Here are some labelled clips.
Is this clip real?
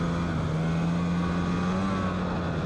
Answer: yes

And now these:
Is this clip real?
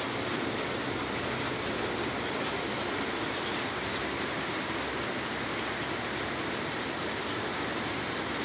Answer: yes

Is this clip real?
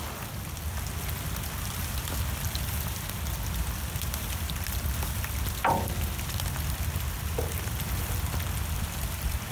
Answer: yes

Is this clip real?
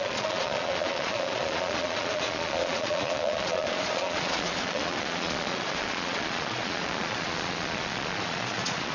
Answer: no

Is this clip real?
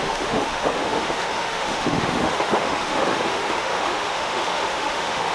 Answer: no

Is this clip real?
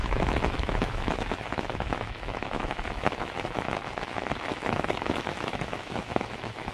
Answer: no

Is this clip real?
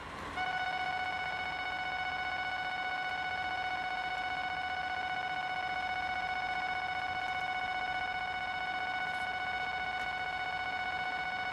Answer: yes